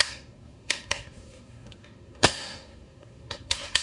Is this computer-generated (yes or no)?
yes